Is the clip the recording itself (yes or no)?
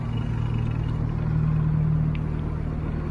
yes